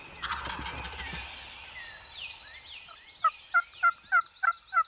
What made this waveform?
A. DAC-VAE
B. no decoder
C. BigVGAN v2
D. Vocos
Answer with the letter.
B